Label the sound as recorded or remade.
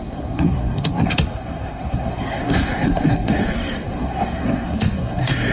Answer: remade